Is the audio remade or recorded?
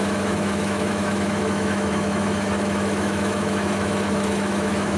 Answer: remade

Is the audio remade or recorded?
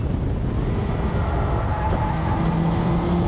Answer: recorded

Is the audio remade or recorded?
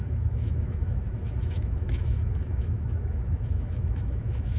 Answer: remade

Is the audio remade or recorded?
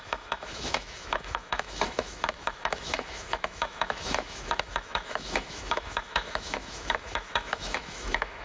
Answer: remade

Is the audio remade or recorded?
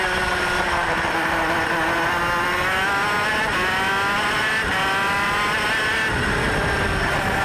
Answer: recorded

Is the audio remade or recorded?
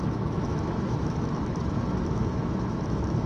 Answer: remade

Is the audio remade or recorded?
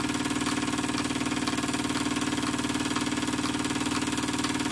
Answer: recorded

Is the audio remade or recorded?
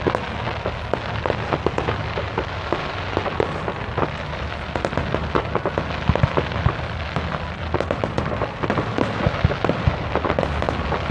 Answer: recorded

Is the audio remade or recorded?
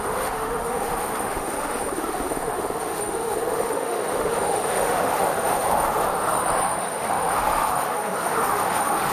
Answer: remade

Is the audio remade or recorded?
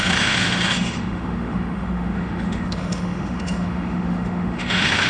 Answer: remade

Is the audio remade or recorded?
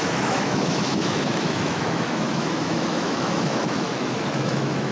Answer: remade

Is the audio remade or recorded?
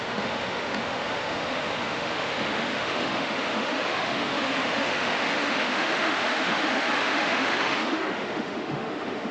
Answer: remade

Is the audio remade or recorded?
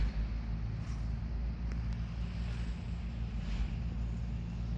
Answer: recorded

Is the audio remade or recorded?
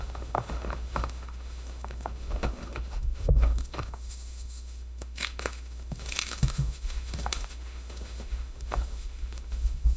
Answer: remade